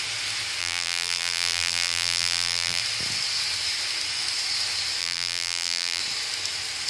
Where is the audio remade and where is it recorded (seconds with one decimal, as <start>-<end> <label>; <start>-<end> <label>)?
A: 0.0-0.6 recorded; 0.6-2.8 remade; 2.8-5.0 recorded; 5.0-6.0 remade; 6.0-6.9 recorded